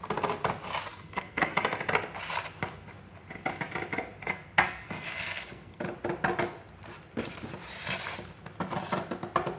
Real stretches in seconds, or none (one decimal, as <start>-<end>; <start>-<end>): 0.0-0.9; 1.5-4.2; 5.8-9.6